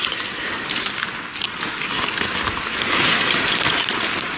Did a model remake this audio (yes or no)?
no